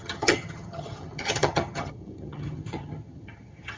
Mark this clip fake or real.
fake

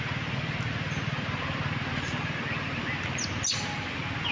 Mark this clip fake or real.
real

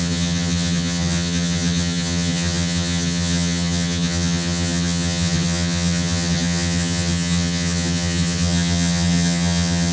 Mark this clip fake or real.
fake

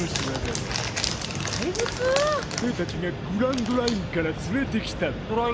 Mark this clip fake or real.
real